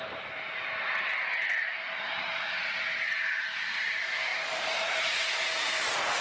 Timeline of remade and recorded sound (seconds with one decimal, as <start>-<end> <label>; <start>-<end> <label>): 0.0-4.3 recorded; 4.3-6.2 remade